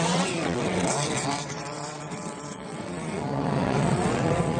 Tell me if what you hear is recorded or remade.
remade